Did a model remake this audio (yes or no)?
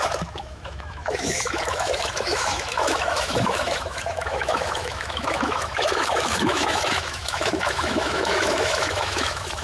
yes